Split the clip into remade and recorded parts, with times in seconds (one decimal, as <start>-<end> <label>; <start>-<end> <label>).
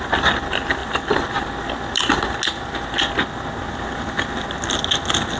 0.0-5.4 recorded